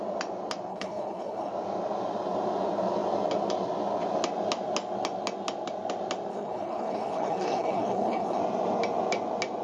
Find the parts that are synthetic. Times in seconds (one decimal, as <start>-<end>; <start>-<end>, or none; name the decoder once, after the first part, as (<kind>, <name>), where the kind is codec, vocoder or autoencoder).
0.7-1.5 (codec, HILCodec); 6.3-8.4